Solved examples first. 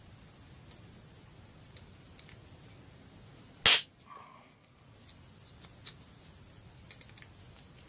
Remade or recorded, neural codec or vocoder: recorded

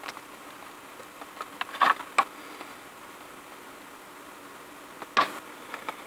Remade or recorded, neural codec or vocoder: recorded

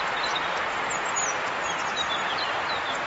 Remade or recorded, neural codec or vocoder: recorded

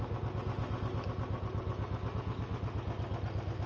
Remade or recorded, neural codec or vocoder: recorded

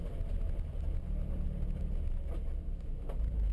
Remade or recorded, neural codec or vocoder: recorded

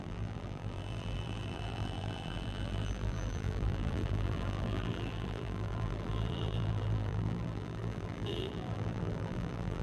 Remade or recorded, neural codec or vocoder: remade, vocoder, BigVGAN v2